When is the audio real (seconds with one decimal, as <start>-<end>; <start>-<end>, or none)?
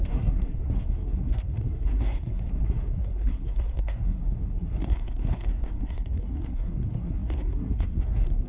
none